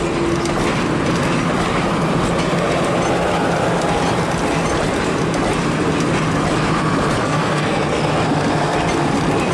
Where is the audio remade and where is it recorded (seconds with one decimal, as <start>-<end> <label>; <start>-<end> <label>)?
0.0-7.2 recorded; 7.2-8.0 remade; 8.0-9.5 recorded